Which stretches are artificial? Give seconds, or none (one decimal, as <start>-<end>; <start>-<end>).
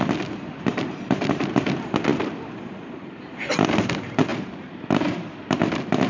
0.7-1.6; 2.1-3.4; 4.3-5.6